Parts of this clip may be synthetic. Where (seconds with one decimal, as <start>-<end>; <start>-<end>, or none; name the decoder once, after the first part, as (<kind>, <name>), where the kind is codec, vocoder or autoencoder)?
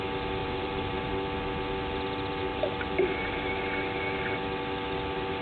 0.4-1.1 (vocoder, BigVGAN v2); 2.5-3.5